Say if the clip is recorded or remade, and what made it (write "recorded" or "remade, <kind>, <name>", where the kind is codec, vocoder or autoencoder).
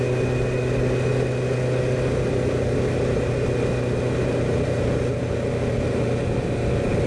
recorded